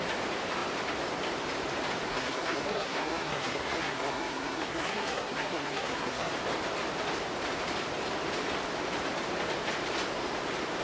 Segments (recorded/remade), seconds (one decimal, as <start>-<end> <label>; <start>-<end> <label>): 0.0-2.1 recorded; 2.1-6.3 remade; 6.3-10.8 recorded